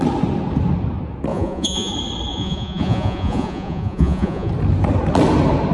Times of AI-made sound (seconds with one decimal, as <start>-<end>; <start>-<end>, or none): 1.3-1.9; 2.3-4.5